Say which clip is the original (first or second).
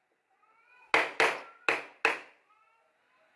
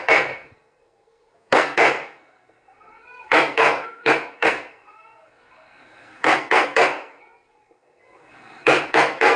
first